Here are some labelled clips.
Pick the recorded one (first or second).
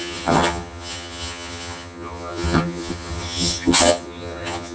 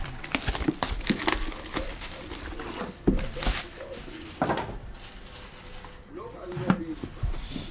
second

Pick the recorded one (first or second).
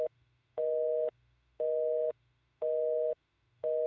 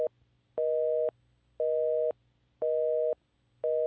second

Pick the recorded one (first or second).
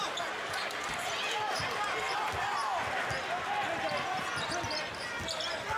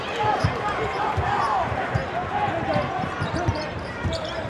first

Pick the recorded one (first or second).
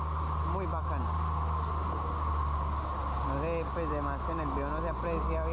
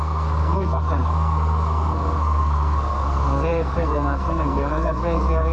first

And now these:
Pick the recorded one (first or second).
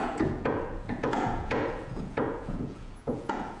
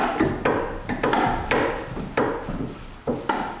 second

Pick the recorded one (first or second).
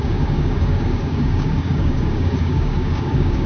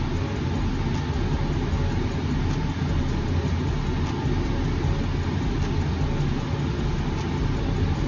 second